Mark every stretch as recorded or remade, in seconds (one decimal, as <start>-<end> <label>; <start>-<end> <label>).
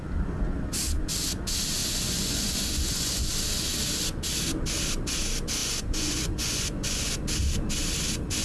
0.0-1.8 recorded; 1.8-3.3 remade; 3.3-5.6 recorded; 5.6-7.1 remade; 7.1-8.4 recorded